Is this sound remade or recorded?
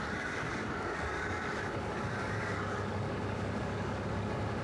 remade